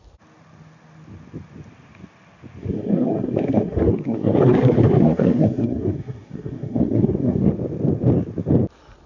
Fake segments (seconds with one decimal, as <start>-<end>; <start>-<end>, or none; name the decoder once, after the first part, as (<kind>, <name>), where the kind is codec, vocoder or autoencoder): 2.6-7.5 (codec, SNAC)